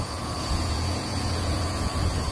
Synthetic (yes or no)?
yes